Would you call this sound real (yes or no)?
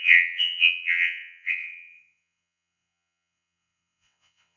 no